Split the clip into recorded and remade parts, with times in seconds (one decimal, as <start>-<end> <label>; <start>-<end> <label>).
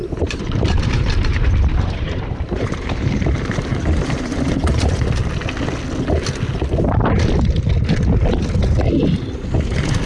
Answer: 0.0-5.2 remade; 5.2-10.1 recorded